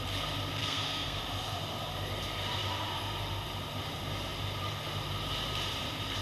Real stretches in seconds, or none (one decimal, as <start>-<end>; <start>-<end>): 0.0-0.6; 1.2-6.2